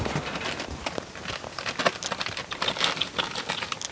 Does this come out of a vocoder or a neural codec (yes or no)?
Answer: no